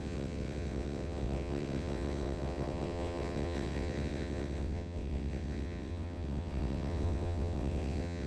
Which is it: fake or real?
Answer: fake